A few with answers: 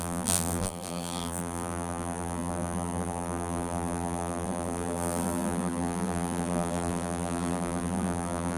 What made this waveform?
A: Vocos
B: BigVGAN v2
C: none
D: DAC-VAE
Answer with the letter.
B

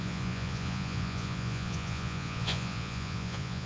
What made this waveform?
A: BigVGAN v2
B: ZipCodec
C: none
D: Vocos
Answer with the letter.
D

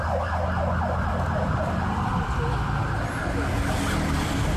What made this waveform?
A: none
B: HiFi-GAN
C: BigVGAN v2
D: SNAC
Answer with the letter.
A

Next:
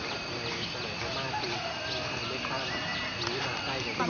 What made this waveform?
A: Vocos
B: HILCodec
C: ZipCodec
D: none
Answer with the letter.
D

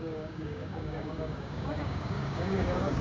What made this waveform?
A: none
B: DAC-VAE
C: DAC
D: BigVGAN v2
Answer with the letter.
C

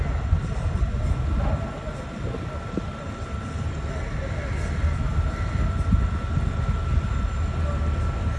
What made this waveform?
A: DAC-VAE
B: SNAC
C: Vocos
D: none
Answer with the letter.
D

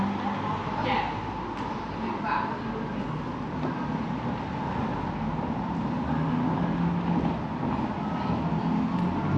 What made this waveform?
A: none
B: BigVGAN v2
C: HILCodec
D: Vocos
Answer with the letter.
A